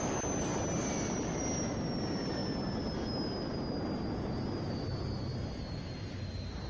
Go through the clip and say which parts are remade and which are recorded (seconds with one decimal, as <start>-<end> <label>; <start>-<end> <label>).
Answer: 0.0-6.7 recorded